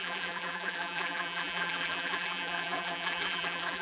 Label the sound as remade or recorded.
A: remade